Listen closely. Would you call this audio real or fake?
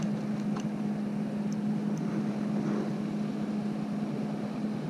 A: real